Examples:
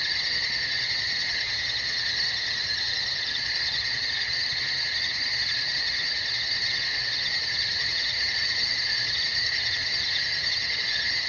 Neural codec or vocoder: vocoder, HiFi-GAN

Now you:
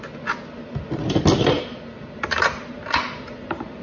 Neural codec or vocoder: none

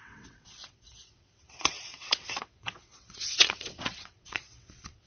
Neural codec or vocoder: vocoder, WaveNeXt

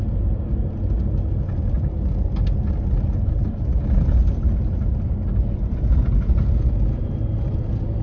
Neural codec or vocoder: none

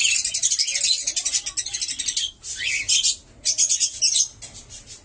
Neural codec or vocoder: none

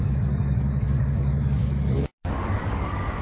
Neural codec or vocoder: codec, DAC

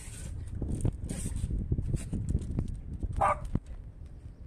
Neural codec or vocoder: none